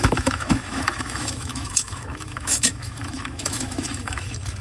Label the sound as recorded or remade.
remade